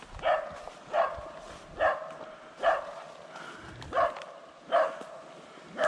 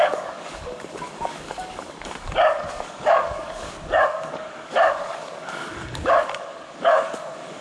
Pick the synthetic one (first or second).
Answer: second